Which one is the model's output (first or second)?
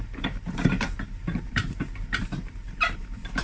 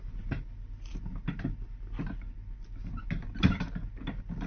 first